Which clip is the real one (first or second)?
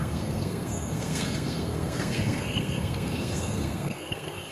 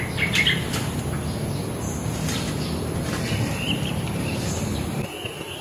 second